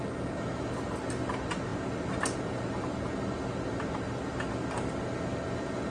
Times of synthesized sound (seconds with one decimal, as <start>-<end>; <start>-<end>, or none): none